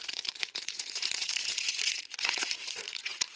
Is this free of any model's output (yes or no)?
no